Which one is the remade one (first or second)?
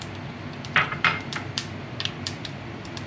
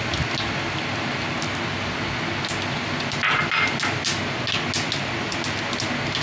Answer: first